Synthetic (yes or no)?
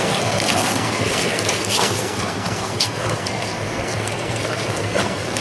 yes